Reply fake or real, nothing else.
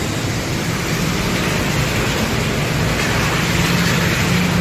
real